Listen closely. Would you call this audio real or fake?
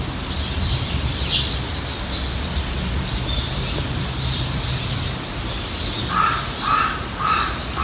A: real